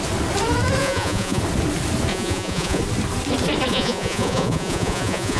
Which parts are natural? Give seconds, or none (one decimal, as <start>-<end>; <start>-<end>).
0.0-0.8; 1.4-2.1; 2.8-3.7